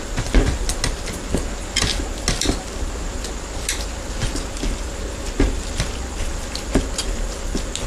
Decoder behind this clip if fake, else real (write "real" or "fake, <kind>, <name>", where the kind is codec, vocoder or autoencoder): real